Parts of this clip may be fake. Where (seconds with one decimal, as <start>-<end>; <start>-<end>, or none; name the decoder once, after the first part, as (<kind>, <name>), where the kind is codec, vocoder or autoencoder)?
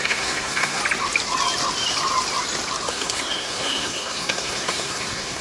0.0-0.8 (codec, SNAC); 2.9-5.4